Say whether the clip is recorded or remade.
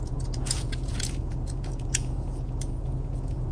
remade